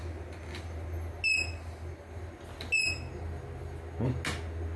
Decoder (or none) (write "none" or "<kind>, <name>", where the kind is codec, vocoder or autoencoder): none